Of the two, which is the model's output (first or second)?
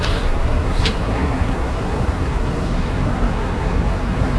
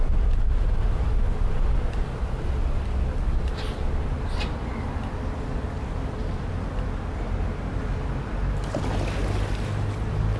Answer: first